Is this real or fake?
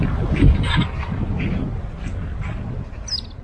real